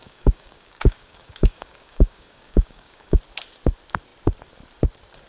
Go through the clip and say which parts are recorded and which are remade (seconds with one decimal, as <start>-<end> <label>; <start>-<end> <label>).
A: 0.0-3.2 remade; 3.2-5.3 recorded